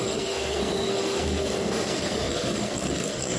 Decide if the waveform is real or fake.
fake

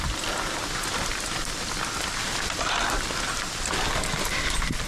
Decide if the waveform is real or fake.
real